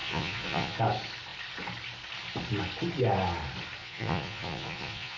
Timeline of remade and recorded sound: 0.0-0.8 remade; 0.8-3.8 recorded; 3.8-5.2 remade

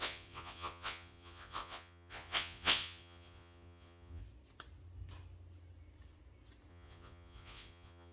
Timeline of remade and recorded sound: 0.0-4.2 remade; 4.2-6.7 recorded; 6.7-8.1 remade